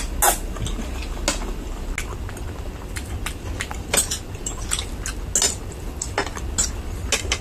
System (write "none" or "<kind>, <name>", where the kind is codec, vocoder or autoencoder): none